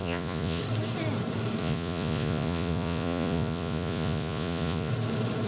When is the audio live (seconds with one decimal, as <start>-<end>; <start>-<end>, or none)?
0.6-1.6; 4.9-5.5